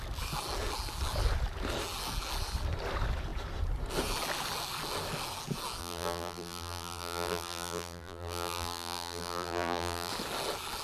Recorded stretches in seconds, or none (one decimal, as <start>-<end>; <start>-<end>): 0.0-5.8; 10.1-10.8